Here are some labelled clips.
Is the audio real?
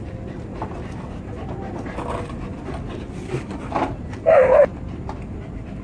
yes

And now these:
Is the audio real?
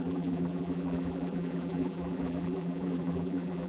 no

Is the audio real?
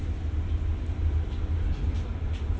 yes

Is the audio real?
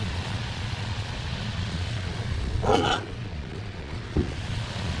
no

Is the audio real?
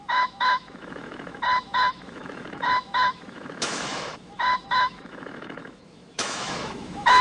no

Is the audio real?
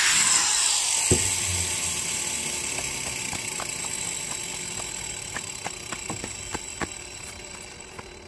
yes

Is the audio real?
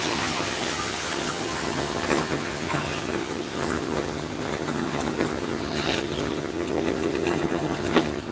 no